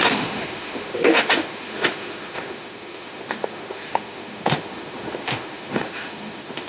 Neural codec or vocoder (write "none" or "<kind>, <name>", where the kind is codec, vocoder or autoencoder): autoencoder, DAC-VAE